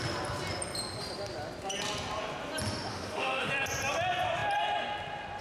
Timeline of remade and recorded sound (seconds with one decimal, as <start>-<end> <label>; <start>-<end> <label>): 0.0-2.9 recorded; 2.9-3.5 remade; 3.5-5.4 recorded